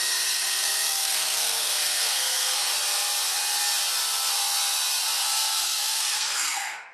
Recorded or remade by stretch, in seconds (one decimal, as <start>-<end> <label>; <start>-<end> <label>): 0.0-2.7 remade; 2.7-5.2 recorded; 5.2-6.9 remade